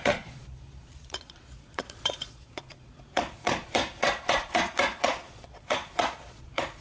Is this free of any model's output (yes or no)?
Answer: no